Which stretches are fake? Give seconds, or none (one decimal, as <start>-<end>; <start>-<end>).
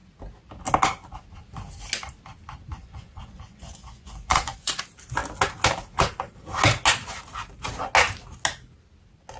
2.8-4.8